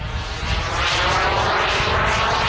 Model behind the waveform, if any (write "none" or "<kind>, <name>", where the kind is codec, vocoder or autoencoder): none